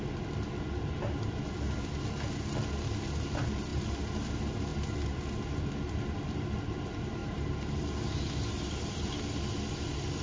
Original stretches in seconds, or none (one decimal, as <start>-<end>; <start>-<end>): 0.0-7.2; 7.8-10.2